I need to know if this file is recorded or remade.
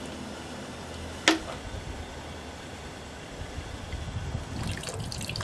recorded